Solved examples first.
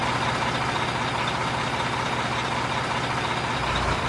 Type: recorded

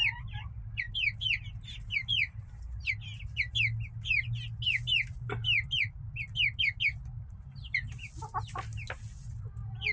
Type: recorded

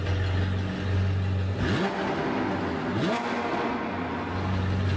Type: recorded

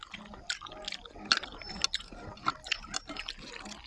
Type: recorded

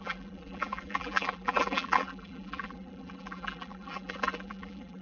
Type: remade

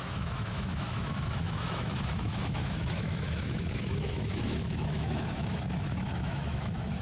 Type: remade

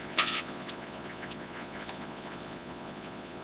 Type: remade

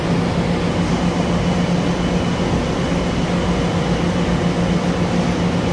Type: recorded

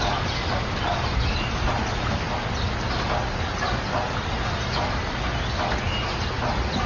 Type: recorded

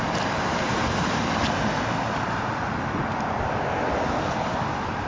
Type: remade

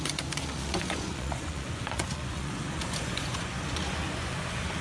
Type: remade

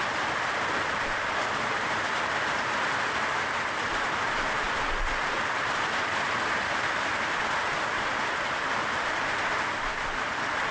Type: remade